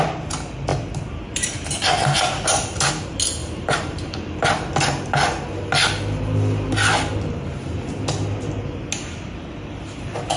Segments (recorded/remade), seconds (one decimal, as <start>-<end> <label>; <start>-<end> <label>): 0.0-3.4 recorded; 3.4-4.2 remade; 4.2-10.4 recorded